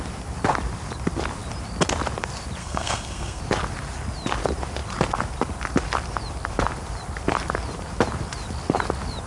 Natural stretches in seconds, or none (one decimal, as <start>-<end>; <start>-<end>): 0.0-2.6; 3.4-9.3